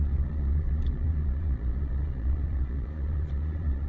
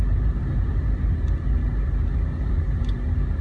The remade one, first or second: first